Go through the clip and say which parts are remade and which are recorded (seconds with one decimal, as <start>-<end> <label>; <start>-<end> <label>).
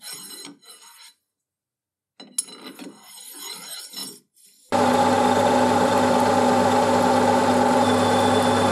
0.0-8.7 recorded